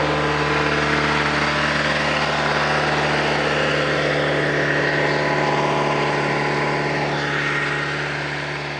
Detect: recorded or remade recorded